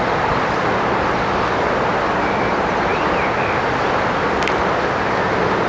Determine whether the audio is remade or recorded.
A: recorded